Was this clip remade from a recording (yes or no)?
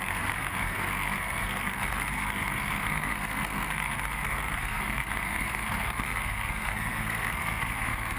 yes